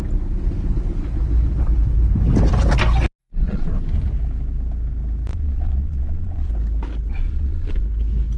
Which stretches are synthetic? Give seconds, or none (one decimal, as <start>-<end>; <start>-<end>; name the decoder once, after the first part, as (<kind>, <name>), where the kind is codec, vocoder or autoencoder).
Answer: 3.2-3.7 (vocoder, Vocos); 5.3-6.5; 7.1-7.8